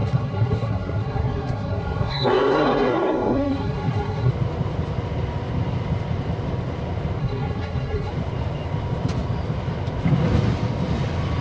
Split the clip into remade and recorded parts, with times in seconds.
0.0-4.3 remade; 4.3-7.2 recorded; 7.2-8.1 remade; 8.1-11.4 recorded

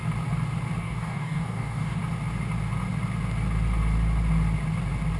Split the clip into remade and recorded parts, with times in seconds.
0.0-0.8 recorded; 0.8-2.0 remade; 2.0-5.2 recorded

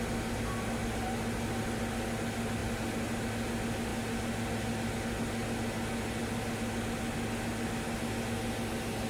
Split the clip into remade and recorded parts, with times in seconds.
0.0-9.1 recorded

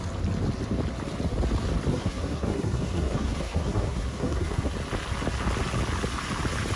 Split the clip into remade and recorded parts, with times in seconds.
0.0-1.9 recorded; 1.9-4.7 remade; 4.7-6.8 recorded

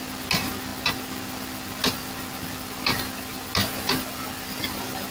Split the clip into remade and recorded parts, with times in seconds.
0.0-5.1 recorded